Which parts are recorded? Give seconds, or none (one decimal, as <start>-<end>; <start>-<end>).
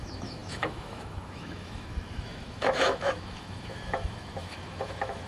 none